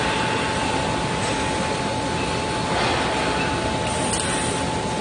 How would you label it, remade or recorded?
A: recorded